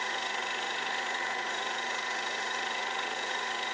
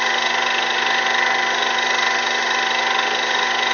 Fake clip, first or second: first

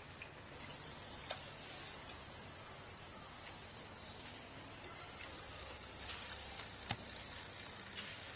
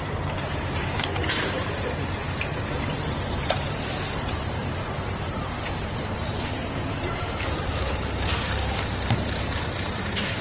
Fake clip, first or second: second